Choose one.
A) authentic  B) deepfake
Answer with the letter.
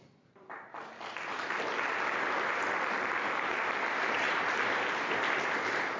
A